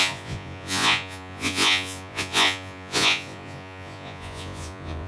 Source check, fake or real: fake